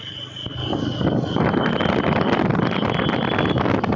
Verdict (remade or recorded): recorded